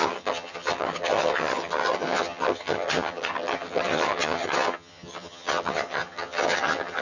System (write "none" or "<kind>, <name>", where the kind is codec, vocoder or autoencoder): vocoder, HiFi-GAN